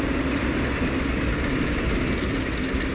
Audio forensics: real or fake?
real